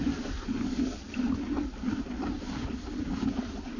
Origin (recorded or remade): recorded